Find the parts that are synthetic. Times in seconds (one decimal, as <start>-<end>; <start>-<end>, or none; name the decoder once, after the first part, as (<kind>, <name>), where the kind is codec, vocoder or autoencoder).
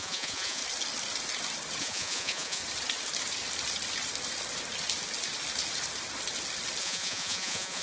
0.0-0.6 (vocoder, Vocos); 1.8-2.6; 6.8-7.8